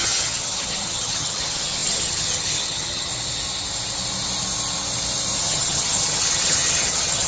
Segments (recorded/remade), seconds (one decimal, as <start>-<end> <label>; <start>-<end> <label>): 0.0-3.1 remade; 3.1-5.4 recorded; 5.4-7.3 remade